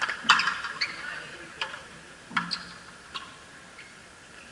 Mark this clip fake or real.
real